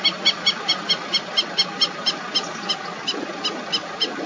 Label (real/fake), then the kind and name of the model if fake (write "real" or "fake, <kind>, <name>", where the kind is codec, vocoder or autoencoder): real